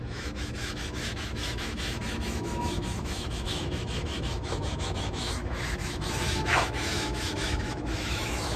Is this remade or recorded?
remade